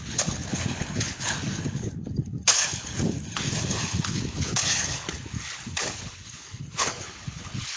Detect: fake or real fake